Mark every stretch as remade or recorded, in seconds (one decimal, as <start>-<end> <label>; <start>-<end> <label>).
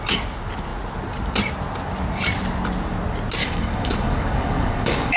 0.0-3.4 recorded; 3.4-5.2 remade